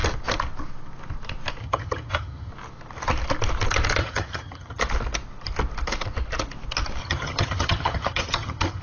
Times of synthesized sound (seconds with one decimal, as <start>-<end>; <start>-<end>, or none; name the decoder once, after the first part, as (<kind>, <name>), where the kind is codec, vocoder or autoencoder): 1.6-2.5 (vocoder, HiFi-GAN); 4.0-4.8; 7.0-8.8